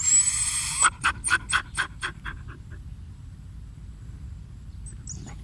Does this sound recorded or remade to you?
recorded